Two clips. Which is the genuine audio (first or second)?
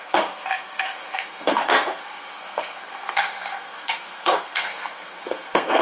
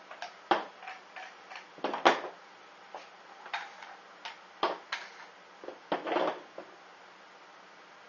second